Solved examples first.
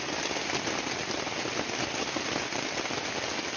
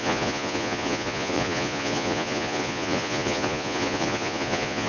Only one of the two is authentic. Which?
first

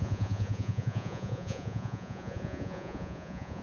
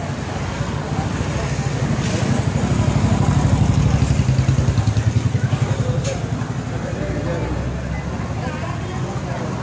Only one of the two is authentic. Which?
second